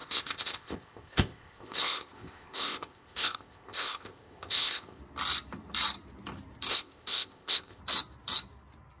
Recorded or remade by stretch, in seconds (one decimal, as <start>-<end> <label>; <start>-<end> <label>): 0.0-5.0 remade; 5.0-6.7 recorded; 6.7-7.8 remade; 7.8-9.0 recorded